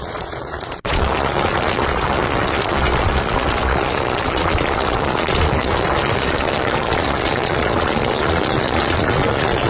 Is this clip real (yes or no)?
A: no